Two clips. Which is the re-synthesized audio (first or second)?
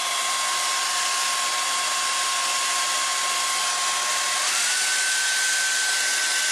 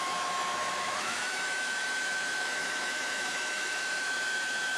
second